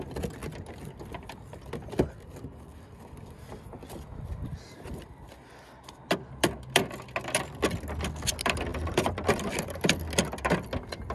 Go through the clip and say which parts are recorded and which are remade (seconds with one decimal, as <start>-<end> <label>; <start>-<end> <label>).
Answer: 0.0-2.7 recorded; 2.7-5.3 remade; 5.3-8.7 recorded; 8.7-9.5 remade; 9.5-11.1 recorded